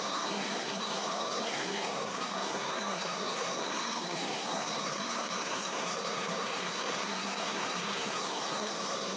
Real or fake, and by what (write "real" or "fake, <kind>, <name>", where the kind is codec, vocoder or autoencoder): fake, codec, SNAC